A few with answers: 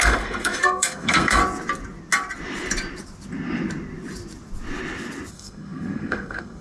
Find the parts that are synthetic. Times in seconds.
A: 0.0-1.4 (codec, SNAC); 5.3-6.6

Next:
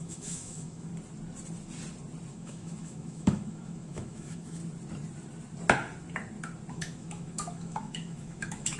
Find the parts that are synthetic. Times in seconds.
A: 0.0-0.9 (autoencoder, DAC-VAE); 2.3-4.6; 6.7-8.8

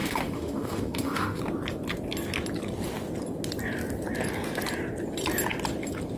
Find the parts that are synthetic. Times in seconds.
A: 0.0-1.4 (autoencoder, DAC-VAE)

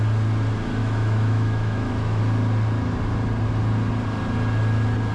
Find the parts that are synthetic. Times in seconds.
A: 0.8-2.2 (autoencoder, DAC-VAE)

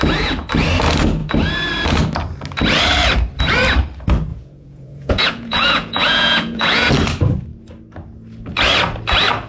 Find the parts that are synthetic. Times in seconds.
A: 4.3-6.9 (vocoder, Vocos)